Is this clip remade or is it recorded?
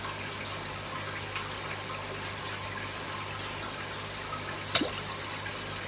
recorded